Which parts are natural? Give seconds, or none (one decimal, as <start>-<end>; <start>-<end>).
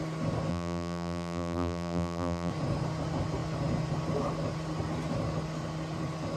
0.0-0.5; 2.5-6.4